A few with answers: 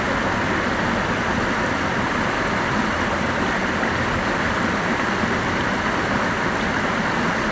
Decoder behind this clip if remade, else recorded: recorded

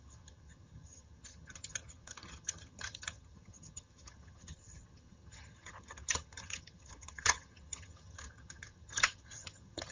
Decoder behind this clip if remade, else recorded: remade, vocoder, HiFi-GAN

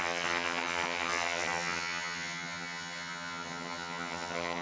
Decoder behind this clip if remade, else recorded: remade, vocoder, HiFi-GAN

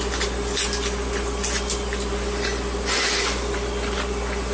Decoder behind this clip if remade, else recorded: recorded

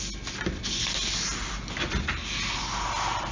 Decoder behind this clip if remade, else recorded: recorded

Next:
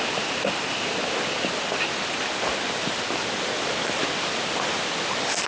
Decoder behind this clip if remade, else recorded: recorded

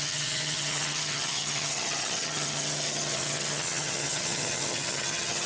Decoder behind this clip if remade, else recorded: remade, vocoder, HiFi-GAN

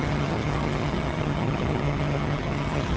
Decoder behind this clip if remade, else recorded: remade, vocoder, HiFi-GAN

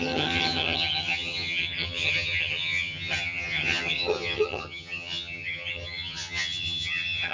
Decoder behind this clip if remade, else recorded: remade, vocoder, HiFi-GAN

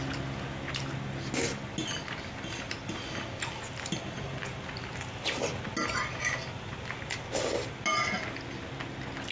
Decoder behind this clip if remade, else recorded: recorded